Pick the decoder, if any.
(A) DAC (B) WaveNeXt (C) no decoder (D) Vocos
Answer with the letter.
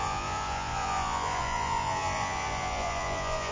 D